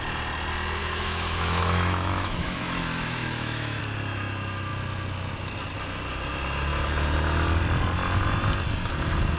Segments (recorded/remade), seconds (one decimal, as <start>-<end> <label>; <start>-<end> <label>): 0.0-0.8 recorded; 0.8-3.8 remade; 3.8-9.4 recorded